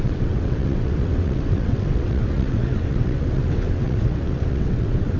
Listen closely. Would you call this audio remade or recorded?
remade